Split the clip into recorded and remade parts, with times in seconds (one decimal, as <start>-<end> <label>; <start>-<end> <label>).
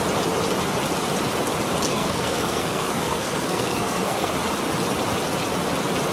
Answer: 0.0-1.9 recorded; 1.9-4.3 remade; 4.3-6.1 recorded